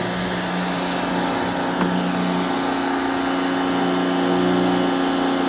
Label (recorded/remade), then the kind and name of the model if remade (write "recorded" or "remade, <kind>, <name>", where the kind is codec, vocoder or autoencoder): recorded